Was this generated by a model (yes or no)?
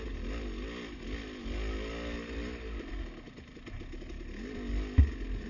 no